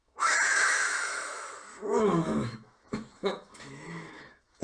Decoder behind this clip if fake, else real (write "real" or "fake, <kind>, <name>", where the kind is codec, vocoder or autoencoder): fake, autoencoder, DAC-VAE